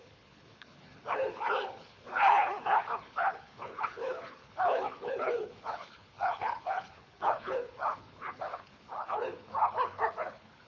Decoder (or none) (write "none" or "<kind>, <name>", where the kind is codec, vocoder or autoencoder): codec, HILCodec